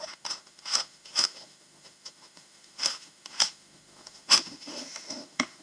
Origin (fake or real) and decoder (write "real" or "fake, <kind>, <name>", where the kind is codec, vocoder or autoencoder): fake, autoencoder, DAC-VAE